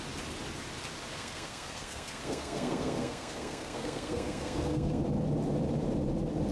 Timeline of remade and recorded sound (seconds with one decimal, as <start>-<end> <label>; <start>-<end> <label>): 0.0-1.1 recorded; 1.1-5.0 remade; 5.0-6.5 recorded